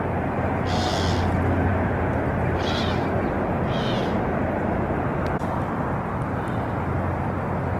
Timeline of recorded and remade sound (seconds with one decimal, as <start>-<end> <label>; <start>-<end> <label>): 0.0-7.8 recorded